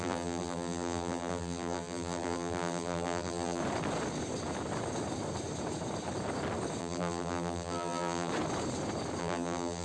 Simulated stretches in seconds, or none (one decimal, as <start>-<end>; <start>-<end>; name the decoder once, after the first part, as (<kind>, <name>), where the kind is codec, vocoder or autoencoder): 0.0-3.6 (vocoder, BigVGAN v2); 6.8-8.3; 9.2-9.8